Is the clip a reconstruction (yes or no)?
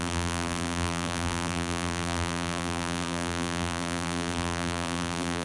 yes